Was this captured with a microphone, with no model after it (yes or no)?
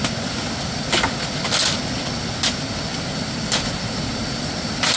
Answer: yes